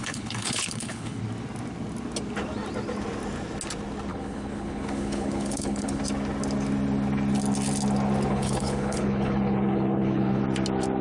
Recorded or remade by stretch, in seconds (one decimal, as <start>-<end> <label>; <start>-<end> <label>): 0.0-1.2 remade; 1.2-4.1 recorded; 4.1-6.0 remade; 6.0-8.3 recorded; 8.3-10.4 remade; 10.4-11.0 recorded